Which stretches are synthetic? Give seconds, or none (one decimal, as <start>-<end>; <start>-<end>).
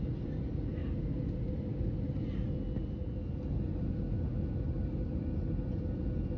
none